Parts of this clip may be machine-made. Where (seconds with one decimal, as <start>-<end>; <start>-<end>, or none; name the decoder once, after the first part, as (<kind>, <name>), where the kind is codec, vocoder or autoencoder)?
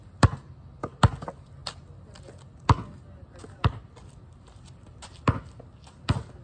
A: none